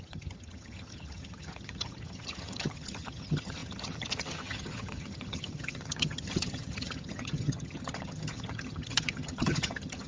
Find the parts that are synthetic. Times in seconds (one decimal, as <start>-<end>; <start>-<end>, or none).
0.0-10.1